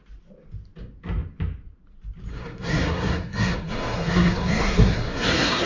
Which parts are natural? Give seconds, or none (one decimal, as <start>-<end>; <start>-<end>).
0.0-2.3

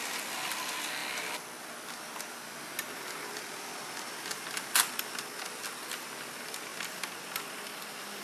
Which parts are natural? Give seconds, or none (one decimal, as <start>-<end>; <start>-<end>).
0.0-8.2

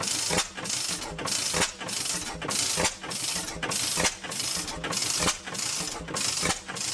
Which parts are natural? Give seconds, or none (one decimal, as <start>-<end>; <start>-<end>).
0.0-6.9

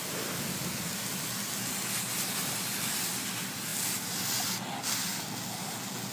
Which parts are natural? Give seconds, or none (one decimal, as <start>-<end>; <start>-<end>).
0.0-6.1

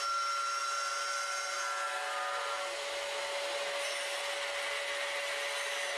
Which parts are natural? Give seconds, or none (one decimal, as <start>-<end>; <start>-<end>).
0.0-6.0

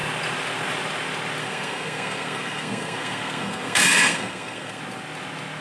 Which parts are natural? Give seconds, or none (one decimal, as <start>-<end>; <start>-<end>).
0.0-1.4; 4.8-5.6

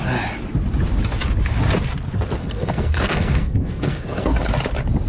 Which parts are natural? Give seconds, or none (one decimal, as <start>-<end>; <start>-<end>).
0.0-2.4; 4.4-5.1